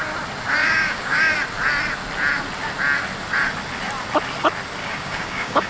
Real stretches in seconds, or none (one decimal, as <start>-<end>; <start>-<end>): 0.0-0.6; 1.3-4.8